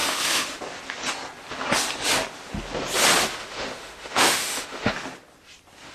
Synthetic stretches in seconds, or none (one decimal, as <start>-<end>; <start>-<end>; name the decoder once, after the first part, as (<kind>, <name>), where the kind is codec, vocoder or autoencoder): 0.0-0.6 (autoencoder, DAC-VAE); 3.4-4.9